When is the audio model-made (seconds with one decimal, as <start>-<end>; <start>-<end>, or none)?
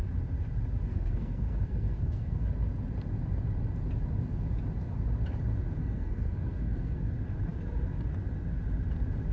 0.9-2.5; 5.8-7.0